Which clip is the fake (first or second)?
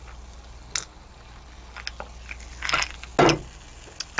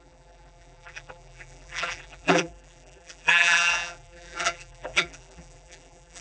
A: second